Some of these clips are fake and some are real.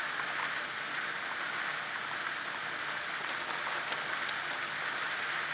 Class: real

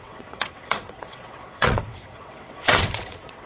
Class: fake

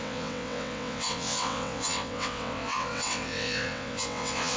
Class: fake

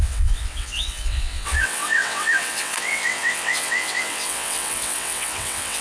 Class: fake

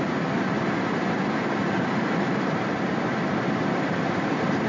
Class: real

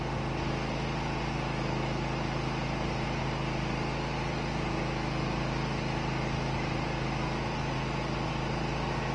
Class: real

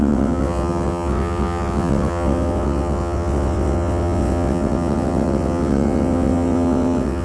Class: fake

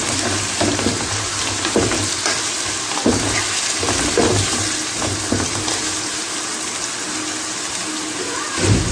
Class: real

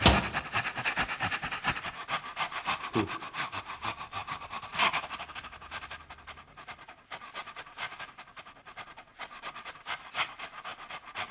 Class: real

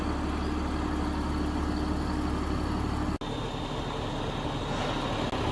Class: real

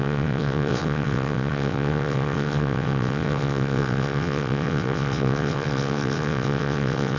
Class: fake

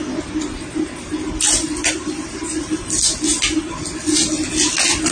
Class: real